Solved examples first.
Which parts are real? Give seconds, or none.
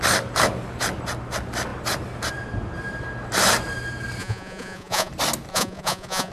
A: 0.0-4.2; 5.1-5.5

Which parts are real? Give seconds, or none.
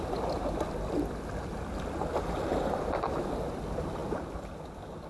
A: 0.0-5.1